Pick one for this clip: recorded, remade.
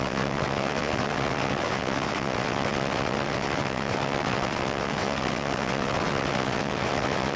remade